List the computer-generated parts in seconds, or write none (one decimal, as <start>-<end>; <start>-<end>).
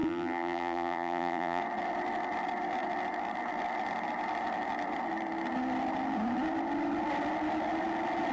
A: 0.0-1.6